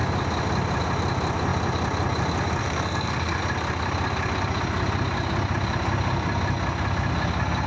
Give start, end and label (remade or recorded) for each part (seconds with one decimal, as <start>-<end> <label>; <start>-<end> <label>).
0.0-2.6 recorded; 2.6-3.4 remade; 3.4-7.7 recorded